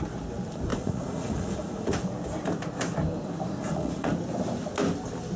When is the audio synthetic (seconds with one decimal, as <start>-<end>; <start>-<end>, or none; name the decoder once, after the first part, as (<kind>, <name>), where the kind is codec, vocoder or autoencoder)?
0.7-1.9 (vocoder, Vocos); 3.6-4.1